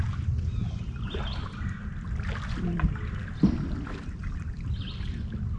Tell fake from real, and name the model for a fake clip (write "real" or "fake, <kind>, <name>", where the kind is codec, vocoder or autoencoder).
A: real